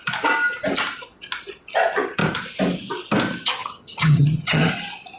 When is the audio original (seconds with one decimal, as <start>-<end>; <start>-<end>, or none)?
0.0-3.6; 4.7-5.2